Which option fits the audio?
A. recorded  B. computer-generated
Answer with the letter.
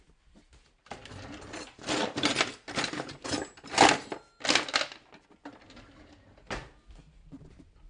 A